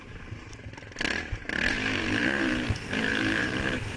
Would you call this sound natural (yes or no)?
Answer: no